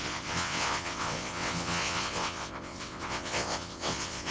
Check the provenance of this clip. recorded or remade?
remade